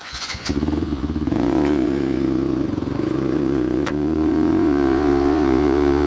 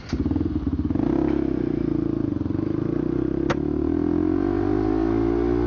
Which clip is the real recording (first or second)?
second